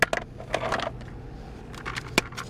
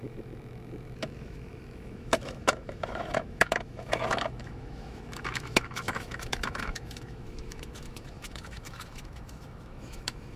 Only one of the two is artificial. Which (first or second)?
second